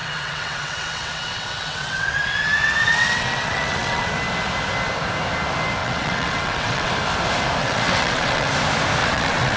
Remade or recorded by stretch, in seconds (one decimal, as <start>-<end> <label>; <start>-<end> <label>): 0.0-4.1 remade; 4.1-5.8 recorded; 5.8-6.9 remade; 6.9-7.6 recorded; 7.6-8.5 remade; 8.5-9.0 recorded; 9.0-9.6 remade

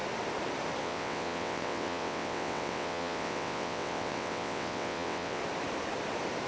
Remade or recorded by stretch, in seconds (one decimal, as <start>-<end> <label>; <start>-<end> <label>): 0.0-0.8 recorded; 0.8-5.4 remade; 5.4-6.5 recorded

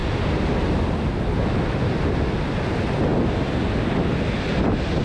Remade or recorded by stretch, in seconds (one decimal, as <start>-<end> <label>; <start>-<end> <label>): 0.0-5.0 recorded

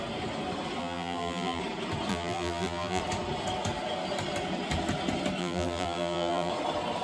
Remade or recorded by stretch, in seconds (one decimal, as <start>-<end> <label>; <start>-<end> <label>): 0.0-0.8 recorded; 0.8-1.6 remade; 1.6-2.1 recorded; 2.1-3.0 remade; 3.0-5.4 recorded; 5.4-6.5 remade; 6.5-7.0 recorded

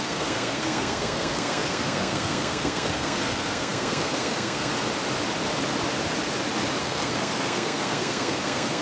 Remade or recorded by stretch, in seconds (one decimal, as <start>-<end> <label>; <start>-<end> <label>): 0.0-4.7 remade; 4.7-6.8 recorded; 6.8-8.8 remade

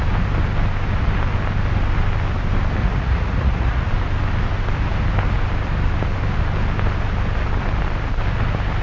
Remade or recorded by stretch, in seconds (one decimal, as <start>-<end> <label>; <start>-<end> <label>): 0.0-2.8 recorded; 2.8-3.9 remade; 3.9-8.8 recorded